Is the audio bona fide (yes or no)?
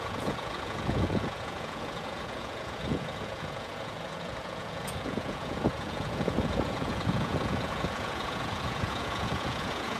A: no